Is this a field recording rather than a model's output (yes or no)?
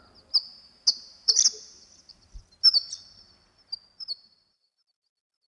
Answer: yes